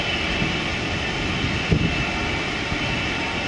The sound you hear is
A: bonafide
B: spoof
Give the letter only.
A